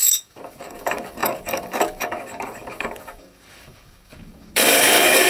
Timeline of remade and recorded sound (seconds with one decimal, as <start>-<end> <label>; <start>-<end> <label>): 0.0-5.3 remade